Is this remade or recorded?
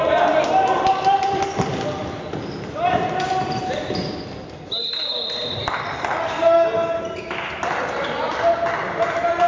recorded